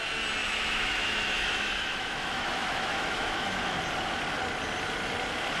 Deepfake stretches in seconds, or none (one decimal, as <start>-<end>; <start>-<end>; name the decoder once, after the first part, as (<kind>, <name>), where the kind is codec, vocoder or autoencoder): 0.4-3.8 (autoencoder, DAC-VAE)